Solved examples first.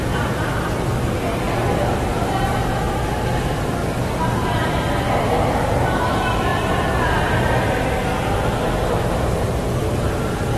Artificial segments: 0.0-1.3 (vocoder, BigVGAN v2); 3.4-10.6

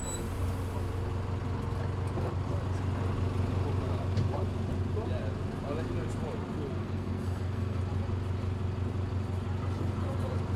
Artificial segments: 6.8-7.8 (codec, SNAC)

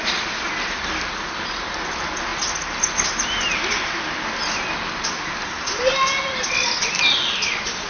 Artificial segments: none